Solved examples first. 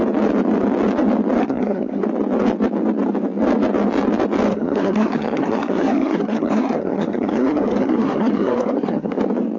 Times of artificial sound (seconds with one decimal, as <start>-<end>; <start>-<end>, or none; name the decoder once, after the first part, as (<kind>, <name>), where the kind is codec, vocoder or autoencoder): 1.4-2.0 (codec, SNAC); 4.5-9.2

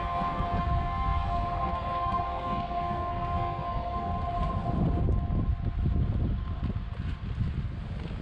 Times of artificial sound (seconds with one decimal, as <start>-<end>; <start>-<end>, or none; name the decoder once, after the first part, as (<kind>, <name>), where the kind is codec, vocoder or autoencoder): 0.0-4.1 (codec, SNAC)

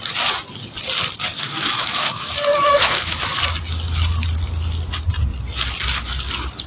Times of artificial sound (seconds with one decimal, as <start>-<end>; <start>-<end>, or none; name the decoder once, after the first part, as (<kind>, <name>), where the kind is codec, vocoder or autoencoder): 1.3-2.3 (autoencoder, DAC-VAE); 2.7-3.2

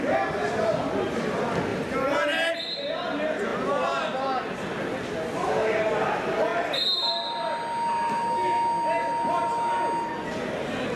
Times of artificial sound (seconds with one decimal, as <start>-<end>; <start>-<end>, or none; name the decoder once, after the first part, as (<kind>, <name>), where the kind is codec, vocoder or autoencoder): 1.7-2.5 (vocoder, BigVGAN v2)

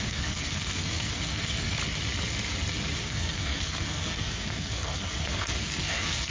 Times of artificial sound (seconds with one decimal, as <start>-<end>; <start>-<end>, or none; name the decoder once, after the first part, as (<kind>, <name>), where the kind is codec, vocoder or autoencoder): 0.0-1.8 (codec, SNAC); 3.0-6.3

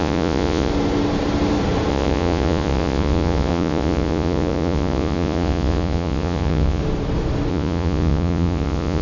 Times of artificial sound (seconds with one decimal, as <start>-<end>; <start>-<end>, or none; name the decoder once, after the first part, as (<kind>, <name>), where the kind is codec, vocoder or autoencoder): 0.0-0.7 (vocoder, Vocos); 1.9-6.8; 7.5-9.0